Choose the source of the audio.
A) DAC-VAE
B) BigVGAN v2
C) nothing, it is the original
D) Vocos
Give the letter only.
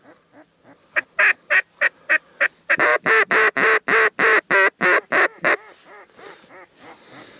C